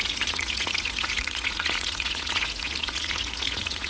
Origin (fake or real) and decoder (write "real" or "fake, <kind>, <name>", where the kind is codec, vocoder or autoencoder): fake, vocoder, Vocos